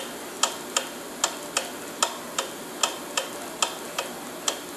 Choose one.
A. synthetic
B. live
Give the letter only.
B